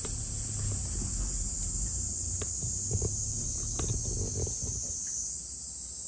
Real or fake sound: real